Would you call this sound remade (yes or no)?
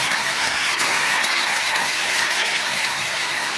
yes